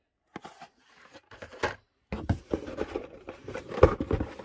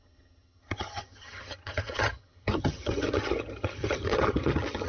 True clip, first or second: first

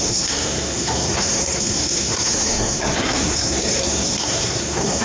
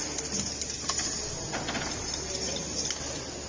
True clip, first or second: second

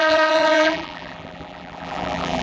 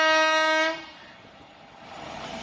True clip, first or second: second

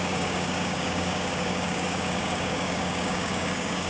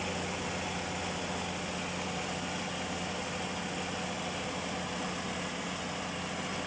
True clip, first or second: second